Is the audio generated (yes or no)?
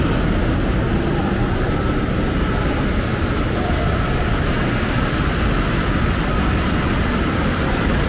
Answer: no